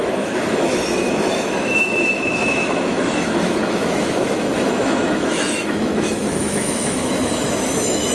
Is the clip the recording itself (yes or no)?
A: no